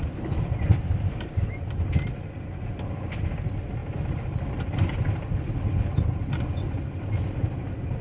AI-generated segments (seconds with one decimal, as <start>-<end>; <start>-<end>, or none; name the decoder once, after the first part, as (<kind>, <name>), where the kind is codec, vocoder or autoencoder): none